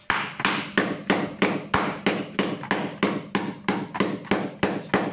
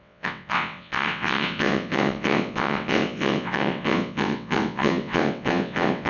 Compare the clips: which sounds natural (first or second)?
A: first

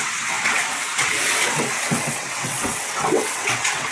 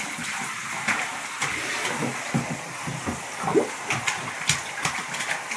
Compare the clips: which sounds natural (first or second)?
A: second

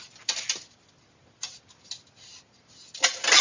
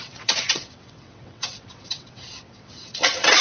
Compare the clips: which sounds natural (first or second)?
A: first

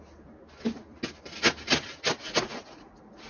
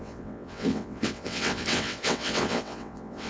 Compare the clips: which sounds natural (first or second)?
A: first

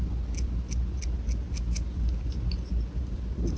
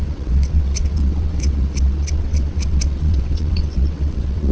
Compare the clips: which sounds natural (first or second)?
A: first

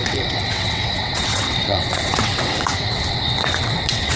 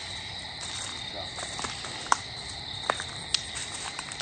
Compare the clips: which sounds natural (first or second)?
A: second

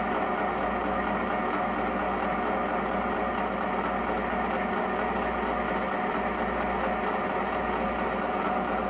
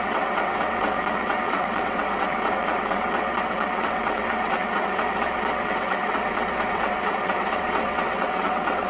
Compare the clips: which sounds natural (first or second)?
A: first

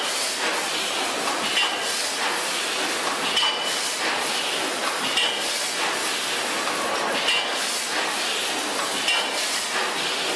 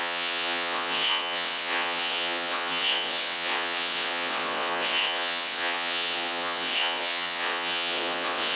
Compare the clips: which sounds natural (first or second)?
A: first